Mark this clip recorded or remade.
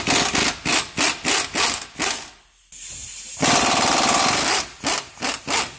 recorded